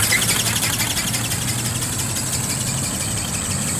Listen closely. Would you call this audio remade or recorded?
recorded